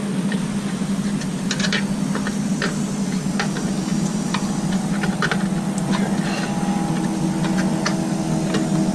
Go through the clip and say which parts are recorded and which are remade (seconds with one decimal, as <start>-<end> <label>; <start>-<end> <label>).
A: 0.0-3.9 recorded; 3.9-4.5 remade; 4.5-8.9 recorded